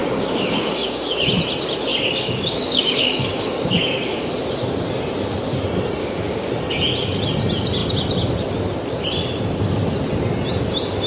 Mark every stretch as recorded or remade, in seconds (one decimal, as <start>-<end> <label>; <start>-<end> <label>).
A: 0.0-1.3 remade; 1.3-1.9 recorded; 1.9-4.3 remade; 4.3-6.0 recorded; 6.0-6.5 remade; 6.5-11.1 recorded